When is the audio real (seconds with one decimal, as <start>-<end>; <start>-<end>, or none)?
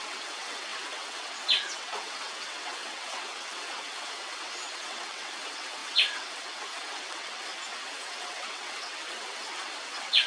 none